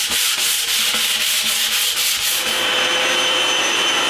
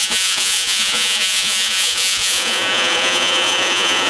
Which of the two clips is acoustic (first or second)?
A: first